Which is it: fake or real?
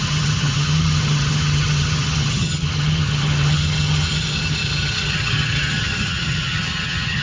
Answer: fake